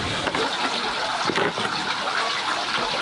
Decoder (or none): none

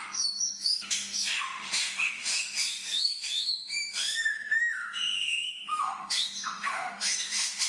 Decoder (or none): autoencoder, DAC-VAE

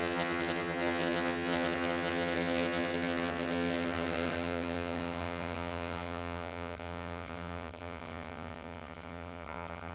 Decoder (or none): vocoder, HiFi-GAN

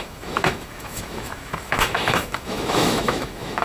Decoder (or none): autoencoder, DAC-VAE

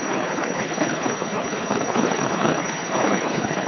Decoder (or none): codec, HILCodec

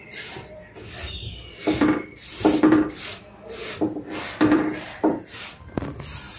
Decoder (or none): vocoder, BigVGAN v2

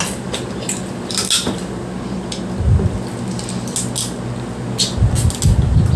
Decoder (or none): none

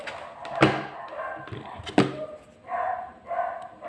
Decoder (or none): none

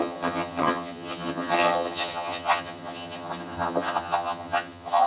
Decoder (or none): vocoder, HiFi-GAN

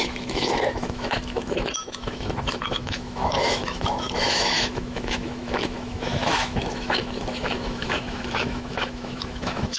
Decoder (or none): autoencoder, DAC-VAE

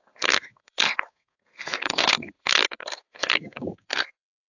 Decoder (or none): codec, SNAC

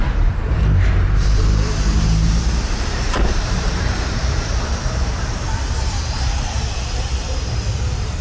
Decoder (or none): vocoder, BigVGAN v2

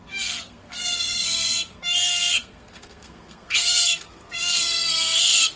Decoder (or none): codec, SNAC